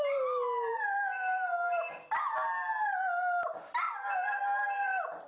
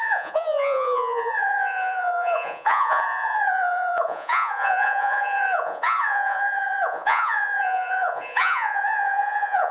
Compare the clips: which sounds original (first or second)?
first